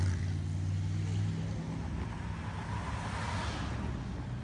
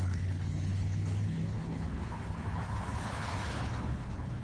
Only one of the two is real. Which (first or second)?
first